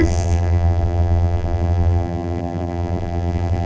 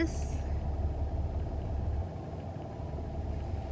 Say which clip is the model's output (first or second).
first